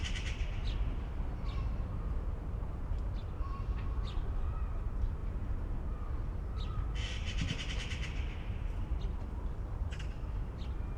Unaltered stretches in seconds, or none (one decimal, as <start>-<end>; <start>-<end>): 0.0-11.0